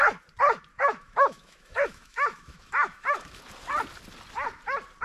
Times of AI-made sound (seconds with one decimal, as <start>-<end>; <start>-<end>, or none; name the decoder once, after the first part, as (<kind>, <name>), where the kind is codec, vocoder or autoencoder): 0.7-3.4 (autoencoder, DAC-VAE)